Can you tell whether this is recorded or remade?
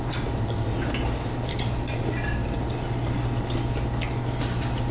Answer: recorded